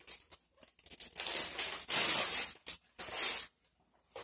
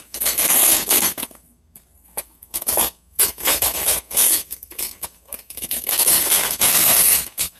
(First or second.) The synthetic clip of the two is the second